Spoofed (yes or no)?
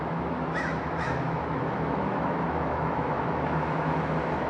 yes